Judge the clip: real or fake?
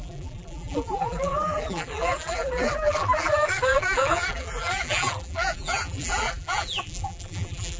fake